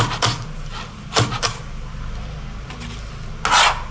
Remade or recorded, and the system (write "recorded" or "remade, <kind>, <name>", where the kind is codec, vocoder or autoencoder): recorded